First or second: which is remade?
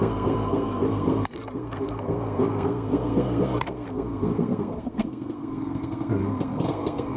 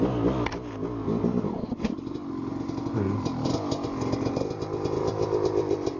first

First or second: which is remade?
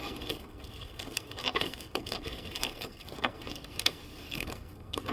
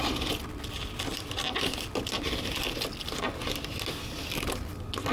first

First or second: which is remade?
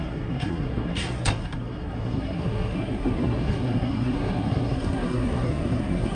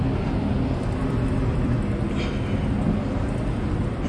first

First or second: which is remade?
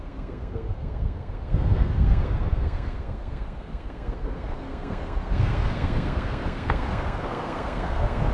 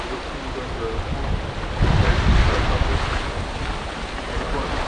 first